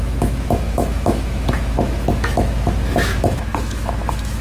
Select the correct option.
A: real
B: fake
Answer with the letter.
B